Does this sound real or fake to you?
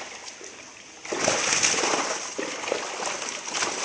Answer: real